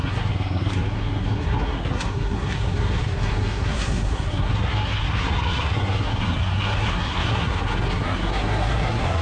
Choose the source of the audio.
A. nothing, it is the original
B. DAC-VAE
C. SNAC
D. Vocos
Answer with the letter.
C